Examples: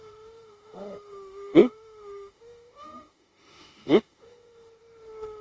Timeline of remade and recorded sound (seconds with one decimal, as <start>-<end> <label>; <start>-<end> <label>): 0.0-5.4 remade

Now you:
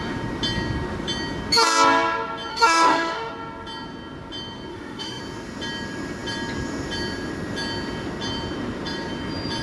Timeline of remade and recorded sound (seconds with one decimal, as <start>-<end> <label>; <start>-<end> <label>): 0.0-2.5 recorded; 2.5-3.3 remade; 3.3-4.7 recorded; 4.7-5.2 remade; 5.2-9.6 recorded

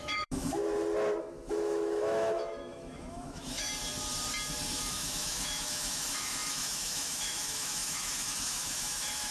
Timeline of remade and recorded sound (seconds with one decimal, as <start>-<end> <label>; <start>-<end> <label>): 0.0-0.6 remade; 0.6-1.2 recorded; 1.2-3.7 remade; 3.7-4.9 recorded; 4.9-9.3 remade

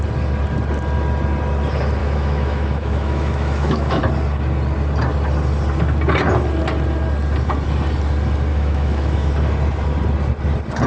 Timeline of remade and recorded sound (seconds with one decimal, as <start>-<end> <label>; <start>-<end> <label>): 0.0-2.0 recorded; 2.0-4.0 remade; 4.0-8.5 recorded; 8.5-9.3 remade; 9.3-10.9 recorded